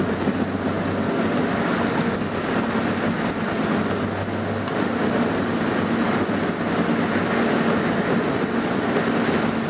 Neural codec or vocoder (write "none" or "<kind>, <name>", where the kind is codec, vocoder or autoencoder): none